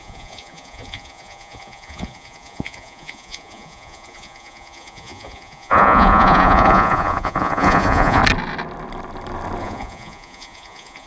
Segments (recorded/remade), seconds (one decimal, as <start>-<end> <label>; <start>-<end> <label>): 0.0-8.2 remade; 8.2-9.6 recorded; 9.6-11.1 remade